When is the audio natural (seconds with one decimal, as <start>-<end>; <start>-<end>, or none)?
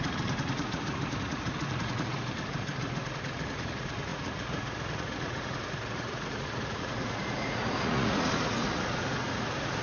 none